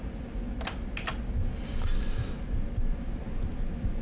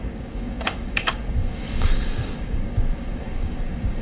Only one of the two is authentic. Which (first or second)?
first